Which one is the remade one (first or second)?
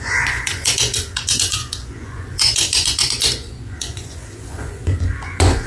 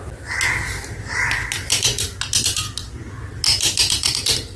first